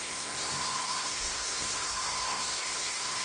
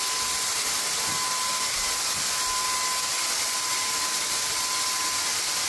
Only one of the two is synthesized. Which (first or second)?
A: first